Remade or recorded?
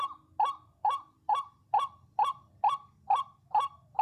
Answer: recorded